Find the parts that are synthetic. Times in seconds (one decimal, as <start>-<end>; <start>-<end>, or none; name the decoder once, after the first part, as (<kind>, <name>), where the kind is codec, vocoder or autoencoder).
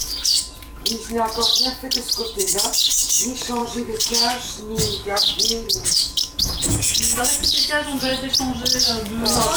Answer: 0.0-1.5 (codec, DAC); 2.4-8.1; 8.8-9.6